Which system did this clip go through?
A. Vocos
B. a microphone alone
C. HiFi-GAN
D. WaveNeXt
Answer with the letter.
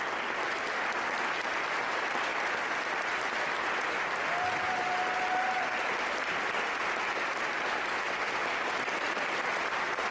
B